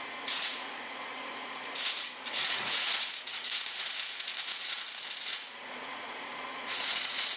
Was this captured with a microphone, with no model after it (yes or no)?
no